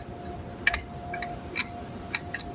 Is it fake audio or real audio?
real